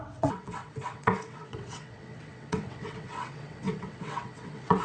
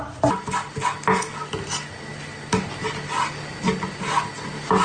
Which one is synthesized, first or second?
first